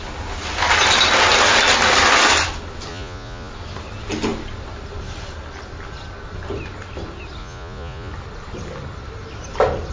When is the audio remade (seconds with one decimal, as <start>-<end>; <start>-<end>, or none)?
2.9-3.5; 7.4-8.1